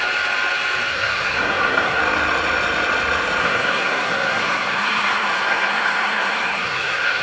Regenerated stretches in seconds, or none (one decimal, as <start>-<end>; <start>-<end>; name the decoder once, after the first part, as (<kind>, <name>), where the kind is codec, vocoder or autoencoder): 0.9-2.0 (codec, SNAC); 3.4-7.2